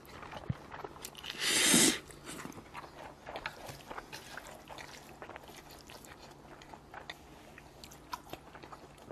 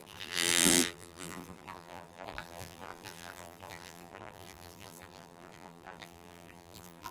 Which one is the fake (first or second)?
second